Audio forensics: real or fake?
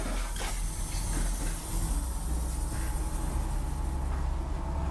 real